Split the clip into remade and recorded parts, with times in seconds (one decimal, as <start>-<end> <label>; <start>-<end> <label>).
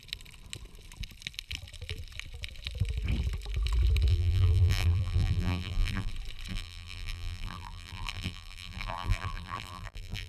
0.0-4.1 recorded; 4.1-6.1 remade; 6.1-6.5 recorded; 6.5-10.3 remade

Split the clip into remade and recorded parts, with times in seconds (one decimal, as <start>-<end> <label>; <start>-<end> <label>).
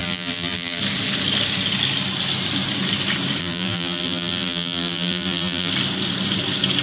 0.0-0.8 remade; 0.8-3.4 recorded; 3.4-5.7 remade; 5.7-6.8 recorded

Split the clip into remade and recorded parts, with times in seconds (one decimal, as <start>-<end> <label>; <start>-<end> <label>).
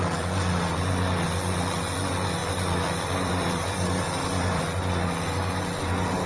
0.0-2.4 recorded; 2.4-4.6 remade; 4.6-6.3 recorded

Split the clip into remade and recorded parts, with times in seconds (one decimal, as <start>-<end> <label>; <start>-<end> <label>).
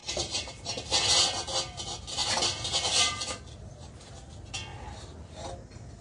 0.0-0.7 remade; 0.7-2.2 recorded; 2.2-3.7 remade; 3.7-6.0 recorded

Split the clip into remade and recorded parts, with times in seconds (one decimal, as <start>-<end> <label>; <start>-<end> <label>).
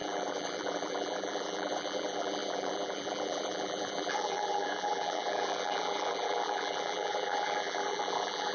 0.0-8.5 remade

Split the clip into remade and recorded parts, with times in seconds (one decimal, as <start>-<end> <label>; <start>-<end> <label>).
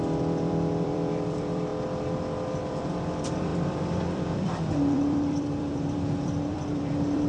0.0-1.7 remade; 1.7-2.6 recorded; 2.6-7.3 remade